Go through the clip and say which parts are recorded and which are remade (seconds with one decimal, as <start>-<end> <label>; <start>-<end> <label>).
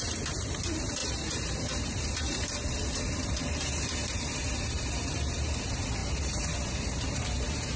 0.0-7.8 remade